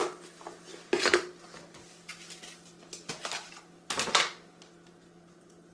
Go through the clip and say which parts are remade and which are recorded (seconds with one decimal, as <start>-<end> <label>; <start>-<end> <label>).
0.0-5.7 recorded